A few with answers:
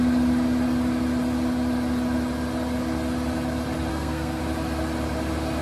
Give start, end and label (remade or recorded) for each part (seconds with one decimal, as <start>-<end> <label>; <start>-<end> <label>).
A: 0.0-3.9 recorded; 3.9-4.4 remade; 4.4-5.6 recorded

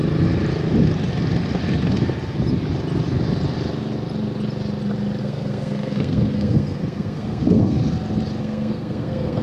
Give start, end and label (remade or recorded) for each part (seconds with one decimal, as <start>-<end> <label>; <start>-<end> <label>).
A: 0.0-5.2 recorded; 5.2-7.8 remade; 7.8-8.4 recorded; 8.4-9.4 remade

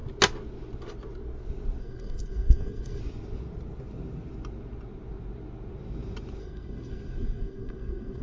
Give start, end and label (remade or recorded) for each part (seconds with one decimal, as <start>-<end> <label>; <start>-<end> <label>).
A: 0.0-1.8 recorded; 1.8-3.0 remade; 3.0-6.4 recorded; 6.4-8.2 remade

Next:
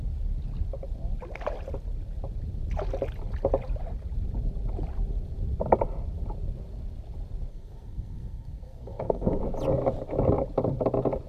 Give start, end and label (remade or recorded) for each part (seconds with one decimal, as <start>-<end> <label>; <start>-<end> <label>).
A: 0.0-7.5 recorded; 7.5-9.4 remade; 9.4-11.3 recorded